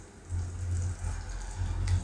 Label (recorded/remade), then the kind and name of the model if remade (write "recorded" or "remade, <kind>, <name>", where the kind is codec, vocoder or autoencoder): recorded